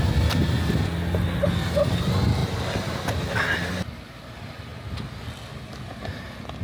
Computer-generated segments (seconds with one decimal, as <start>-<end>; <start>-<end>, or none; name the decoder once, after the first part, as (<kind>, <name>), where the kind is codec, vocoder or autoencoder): none